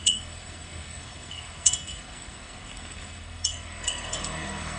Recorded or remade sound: remade